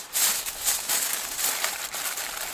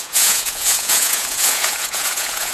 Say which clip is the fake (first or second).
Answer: second